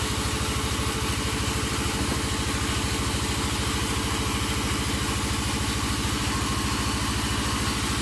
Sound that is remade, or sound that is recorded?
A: recorded